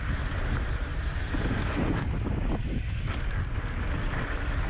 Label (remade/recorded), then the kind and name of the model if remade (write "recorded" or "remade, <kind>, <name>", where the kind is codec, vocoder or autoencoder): recorded